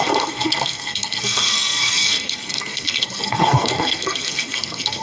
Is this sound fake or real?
fake